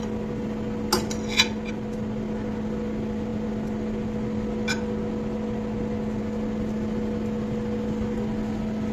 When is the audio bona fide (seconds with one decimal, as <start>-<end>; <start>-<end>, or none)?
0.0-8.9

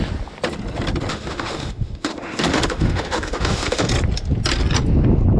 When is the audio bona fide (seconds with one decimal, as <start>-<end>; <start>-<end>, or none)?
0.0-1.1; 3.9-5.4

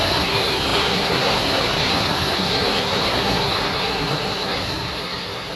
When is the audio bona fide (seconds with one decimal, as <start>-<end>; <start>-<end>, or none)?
none